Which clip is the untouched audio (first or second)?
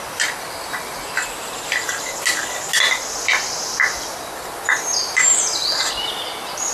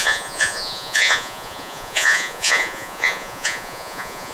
first